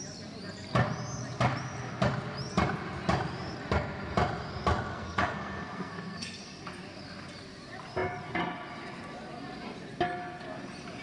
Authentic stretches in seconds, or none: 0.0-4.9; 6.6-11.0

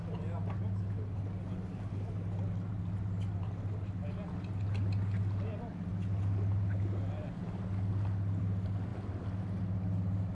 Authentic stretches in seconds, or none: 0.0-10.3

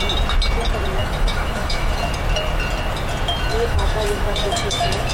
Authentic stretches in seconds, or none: 0.0-1.0; 2.1-3.5